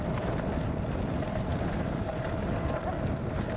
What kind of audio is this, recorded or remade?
recorded